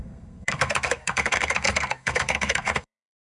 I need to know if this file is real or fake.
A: fake